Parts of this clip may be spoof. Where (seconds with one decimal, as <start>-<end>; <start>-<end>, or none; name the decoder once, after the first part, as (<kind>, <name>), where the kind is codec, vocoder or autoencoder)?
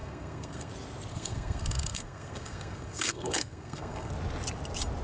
0.0-0.7 (codec, SNAC); 1.1-4.1